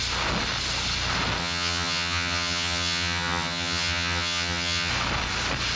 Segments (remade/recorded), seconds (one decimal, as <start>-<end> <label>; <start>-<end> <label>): 0.0-1.4 recorded; 1.4-4.9 remade; 4.9-5.8 recorded

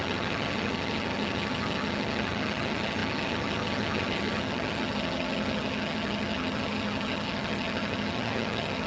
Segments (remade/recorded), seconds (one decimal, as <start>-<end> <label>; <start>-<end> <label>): 0.0-8.9 remade

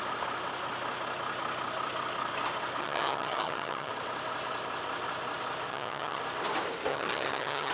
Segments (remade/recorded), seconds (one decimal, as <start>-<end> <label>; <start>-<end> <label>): 0.0-2.8 recorded; 2.8-3.9 remade; 3.9-5.7 recorded; 5.7-6.2 remade; 6.2-6.9 recorded; 6.9-7.7 remade

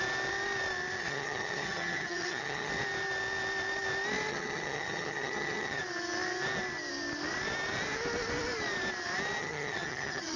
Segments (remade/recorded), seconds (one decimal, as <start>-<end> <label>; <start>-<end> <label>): 0.0-1.0 recorded; 1.0-2.7 remade; 2.7-4.3 recorded; 4.3-5.8 remade; 5.8-9.4 recorded; 9.4-10.4 remade

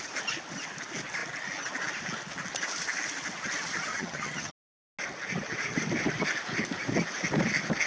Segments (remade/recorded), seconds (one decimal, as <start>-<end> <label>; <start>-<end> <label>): 0.0-3.9 recorded; 3.9-4.5 remade; 4.5-7.9 recorded

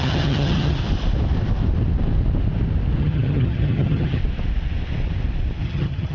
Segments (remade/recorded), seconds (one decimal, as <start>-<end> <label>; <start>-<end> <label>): 0.0-0.8 remade; 0.8-3.0 recorded; 3.0-4.2 remade; 4.2-5.6 recorded; 5.6-6.1 remade